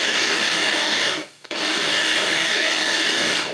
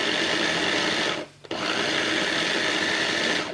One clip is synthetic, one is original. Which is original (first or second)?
second